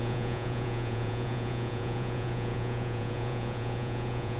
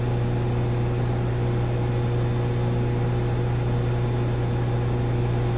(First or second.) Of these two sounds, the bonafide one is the second